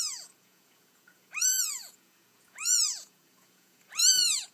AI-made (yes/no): yes